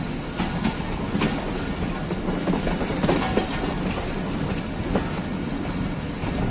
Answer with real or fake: real